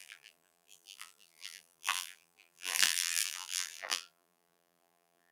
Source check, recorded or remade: remade